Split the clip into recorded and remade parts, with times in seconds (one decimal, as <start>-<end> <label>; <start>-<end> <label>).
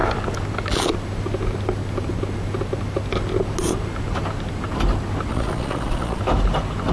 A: 0.0-5.3 recorded; 5.3-6.2 remade; 6.2-6.9 recorded